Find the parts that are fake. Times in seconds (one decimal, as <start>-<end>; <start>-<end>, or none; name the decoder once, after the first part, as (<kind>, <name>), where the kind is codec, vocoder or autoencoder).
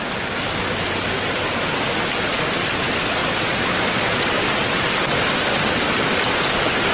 none